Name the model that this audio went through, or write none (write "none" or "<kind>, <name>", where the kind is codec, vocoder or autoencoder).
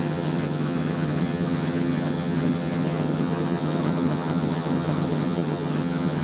vocoder, HiFi-GAN